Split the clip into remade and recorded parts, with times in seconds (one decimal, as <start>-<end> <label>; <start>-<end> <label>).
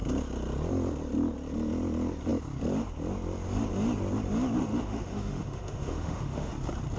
0.0-4.6 recorded; 4.6-6.5 remade; 6.5-7.0 recorded